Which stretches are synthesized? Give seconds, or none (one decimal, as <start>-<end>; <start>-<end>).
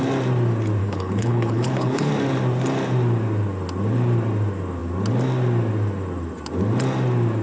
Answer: 0.8-2.1